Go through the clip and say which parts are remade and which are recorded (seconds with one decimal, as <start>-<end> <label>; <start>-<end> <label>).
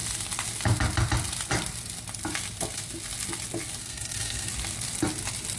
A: 0.0-3.8 recorded; 3.8-4.5 remade; 4.5-5.6 recorded